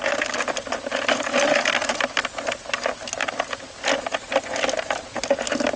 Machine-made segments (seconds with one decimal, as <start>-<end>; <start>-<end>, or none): none